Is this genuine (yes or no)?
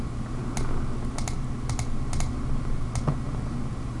yes